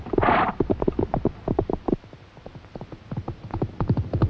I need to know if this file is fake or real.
real